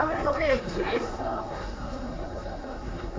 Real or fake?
fake